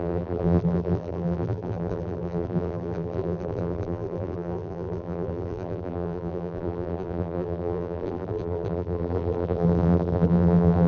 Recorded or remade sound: remade